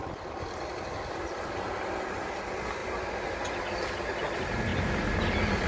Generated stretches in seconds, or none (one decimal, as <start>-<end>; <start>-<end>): 0.0-1.4; 2.8-3.6